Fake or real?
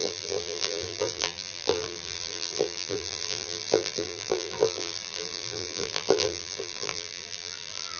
fake